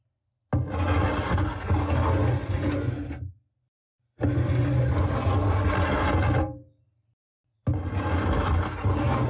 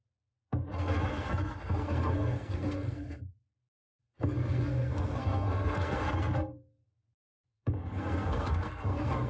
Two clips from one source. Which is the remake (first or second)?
second